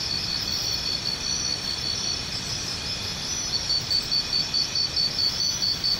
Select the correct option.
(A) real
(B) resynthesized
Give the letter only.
A